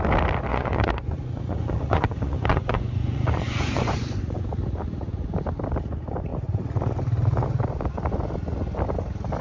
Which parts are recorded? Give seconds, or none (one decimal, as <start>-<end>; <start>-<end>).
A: 0.0-0.5; 4.4-9.4